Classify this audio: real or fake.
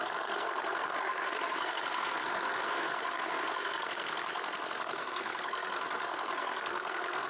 fake